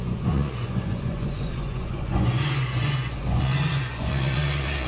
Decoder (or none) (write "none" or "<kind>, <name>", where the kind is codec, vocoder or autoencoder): vocoder, Vocos